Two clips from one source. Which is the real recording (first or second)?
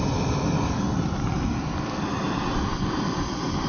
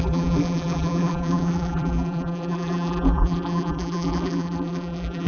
first